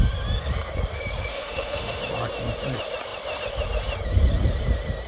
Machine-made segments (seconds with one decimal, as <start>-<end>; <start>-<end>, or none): 1.3-2.0